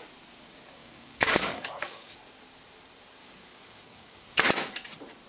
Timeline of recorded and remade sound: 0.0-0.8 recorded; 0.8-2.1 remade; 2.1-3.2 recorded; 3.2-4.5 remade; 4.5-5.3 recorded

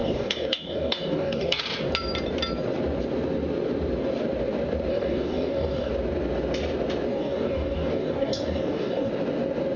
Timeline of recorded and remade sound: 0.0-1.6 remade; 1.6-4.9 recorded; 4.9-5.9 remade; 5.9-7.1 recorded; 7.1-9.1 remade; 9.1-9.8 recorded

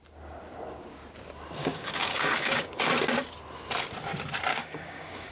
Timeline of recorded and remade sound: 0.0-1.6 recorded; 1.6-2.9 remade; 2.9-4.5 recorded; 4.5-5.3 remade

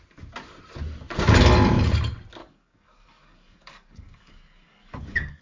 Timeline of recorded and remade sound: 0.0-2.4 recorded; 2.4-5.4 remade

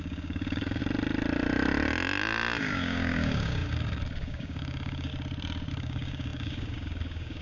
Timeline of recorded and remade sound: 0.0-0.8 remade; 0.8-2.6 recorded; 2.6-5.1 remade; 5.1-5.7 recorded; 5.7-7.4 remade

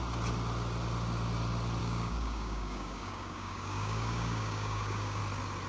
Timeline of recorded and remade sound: 0.0-1.8 recorded; 1.8-5.2 remade; 5.2-5.7 recorded

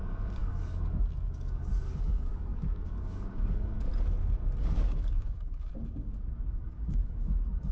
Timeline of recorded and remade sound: 0.0-3.9 remade; 3.9-4.6 recorded; 4.6-5.7 remade; 5.7-6.5 recorded; 6.5-7.7 remade

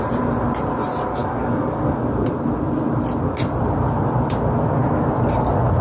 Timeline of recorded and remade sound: 0.0-1.2 recorded; 1.2-2.0 remade; 2.0-5.8 recorded